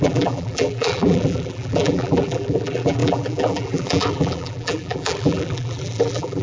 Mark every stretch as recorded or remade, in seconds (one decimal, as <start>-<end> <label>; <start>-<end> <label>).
0.0-6.4 remade

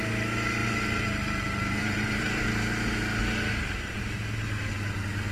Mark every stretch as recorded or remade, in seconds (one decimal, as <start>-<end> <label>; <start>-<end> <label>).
0.0-0.6 recorded; 0.6-2.5 remade; 2.5-5.3 recorded

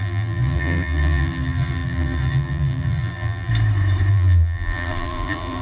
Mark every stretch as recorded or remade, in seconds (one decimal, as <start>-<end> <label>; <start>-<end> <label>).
0.0-3.5 remade; 3.5-4.1 recorded; 4.1-5.6 remade

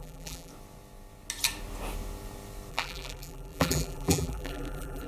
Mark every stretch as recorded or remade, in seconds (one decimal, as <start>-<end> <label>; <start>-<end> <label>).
0.0-0.5 remade; 0.5-2.7 recorded; 2.7-5.1 remade

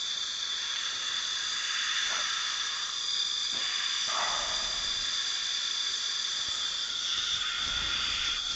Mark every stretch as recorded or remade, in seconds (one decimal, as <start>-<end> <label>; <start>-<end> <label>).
0.0-3.6 remade; 3.6-5.3 recorded; 5.3-8.6 remade